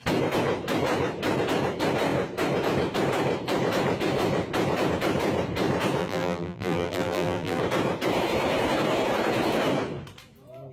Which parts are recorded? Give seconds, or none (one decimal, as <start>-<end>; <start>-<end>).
0.0-6.0; 7.6-10.7